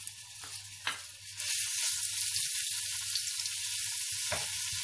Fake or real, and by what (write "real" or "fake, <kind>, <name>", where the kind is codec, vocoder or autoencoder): real